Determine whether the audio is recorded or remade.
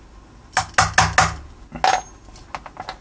recorded